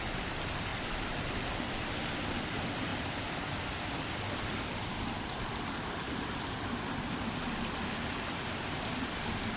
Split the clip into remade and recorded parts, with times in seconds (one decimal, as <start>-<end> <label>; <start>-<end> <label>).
0.0-9.6 recorded